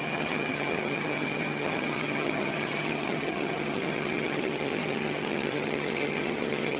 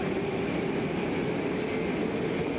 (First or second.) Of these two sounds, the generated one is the first